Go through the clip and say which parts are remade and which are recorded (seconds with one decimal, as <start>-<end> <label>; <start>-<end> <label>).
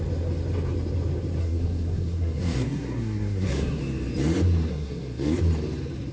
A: 0.0-1.4 recorded; 1.4-3.8 remade; 3.8-4.7 recorded; 4.7-5.4 remade; 5.4-6.1 recorded